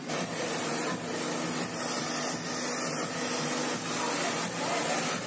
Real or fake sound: real